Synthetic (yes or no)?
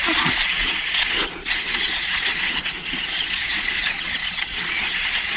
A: yes